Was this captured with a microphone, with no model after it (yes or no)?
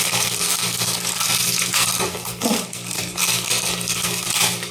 no